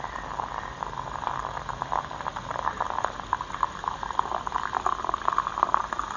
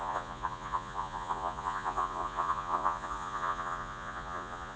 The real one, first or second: first